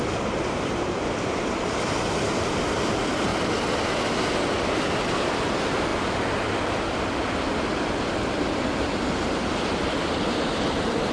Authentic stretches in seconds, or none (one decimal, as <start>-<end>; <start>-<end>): 3.3-4.6

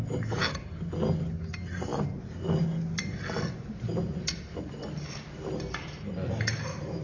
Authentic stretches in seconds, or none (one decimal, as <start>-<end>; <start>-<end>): 0.0-7.0

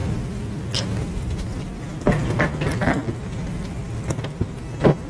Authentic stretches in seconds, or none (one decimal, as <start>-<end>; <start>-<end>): 0.0-5.1

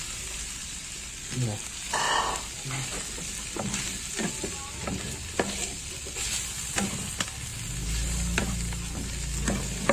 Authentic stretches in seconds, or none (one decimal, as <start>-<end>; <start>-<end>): 0.0-9.9